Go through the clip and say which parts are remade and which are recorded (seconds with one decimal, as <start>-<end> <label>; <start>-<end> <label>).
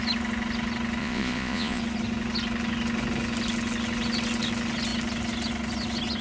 0.0-1.0 recorded; 1.0-1.8 remade; 1.8-6.2 recorded